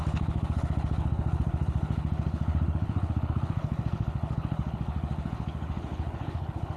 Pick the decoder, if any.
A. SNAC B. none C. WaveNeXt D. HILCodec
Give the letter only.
D